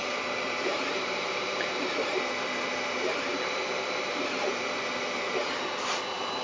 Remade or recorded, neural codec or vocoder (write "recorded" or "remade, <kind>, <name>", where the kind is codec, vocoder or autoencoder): remade, vocoder, BigVGAN v2